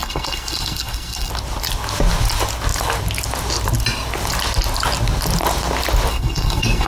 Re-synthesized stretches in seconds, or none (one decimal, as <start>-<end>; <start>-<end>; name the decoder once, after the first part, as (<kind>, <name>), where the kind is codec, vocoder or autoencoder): 0.0-1.3 (codec, SNAC); 6.1-6.9